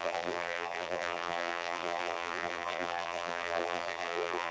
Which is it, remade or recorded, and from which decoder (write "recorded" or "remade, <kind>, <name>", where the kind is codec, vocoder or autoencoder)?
remade, vocoder, BigVGAN v2